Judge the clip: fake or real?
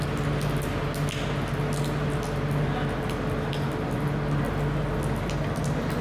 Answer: real